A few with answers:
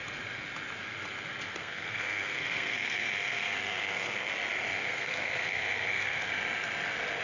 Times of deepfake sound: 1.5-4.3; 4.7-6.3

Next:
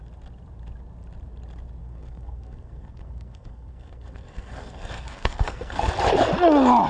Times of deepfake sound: 1.8-5.9